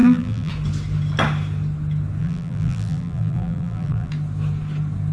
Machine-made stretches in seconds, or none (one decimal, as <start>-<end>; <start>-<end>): 0.0-0.5; 2.2-4.1